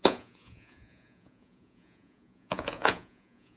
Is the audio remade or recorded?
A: remade